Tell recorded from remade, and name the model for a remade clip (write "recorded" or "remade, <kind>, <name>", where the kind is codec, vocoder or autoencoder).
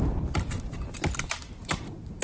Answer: recorded